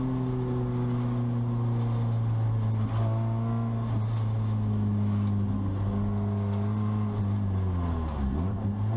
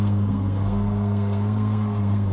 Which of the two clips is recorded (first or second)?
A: first